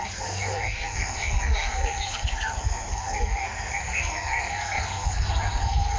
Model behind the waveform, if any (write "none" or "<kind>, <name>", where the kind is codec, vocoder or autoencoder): codec, SNAC